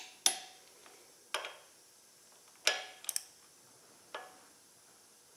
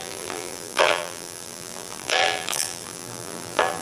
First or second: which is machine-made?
second